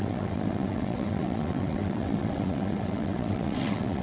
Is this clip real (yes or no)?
no